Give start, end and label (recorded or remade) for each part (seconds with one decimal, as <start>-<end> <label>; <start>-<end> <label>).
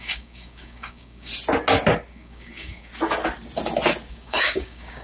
0.0-1.3 remade; 1.3-2.1 recorded; 2.1-2.9 remade; 2.9-4.1 recorded; 4.1-5.0 remade